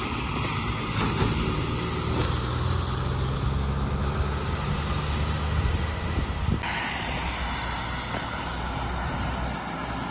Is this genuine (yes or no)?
yes